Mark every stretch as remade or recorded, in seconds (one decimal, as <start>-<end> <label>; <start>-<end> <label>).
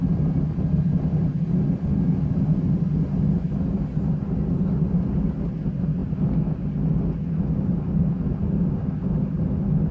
0.0-9.9 recorded